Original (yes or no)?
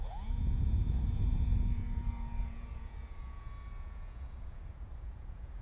no